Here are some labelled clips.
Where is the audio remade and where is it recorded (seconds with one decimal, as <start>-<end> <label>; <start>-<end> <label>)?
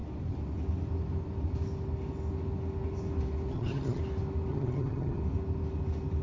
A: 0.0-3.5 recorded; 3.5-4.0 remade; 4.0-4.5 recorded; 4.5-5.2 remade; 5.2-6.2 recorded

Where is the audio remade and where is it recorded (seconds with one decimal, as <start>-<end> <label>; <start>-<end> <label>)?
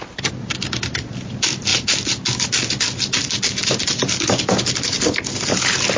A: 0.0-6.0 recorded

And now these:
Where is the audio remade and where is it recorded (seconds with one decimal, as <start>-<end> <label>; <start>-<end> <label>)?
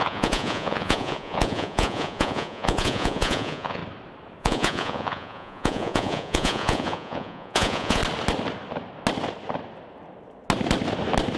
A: 0.0-3.8 remade; 3.8-4.4 recorded; 4.4-8.0 remade; 8.0-11.4 recorded